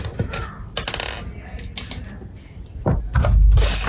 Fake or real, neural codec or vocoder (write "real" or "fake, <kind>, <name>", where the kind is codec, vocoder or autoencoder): real